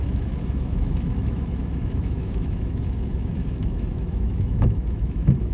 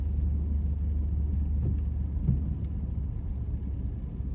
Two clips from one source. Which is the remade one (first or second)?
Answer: first